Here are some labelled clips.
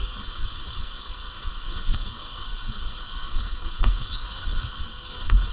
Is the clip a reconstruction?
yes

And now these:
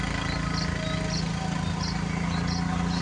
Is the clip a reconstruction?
no